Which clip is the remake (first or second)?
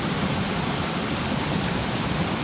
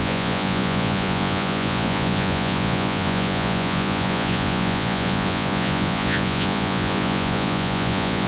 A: second